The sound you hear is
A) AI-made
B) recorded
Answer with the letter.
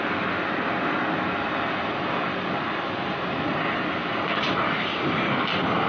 B